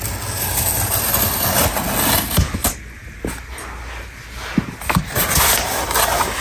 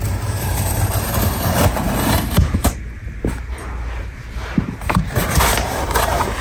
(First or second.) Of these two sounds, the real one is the first